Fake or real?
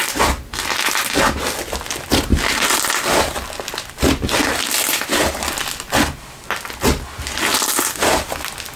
real